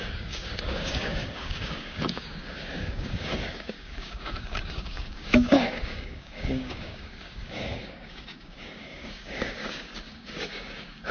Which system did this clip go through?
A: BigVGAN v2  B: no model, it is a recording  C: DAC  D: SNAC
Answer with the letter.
C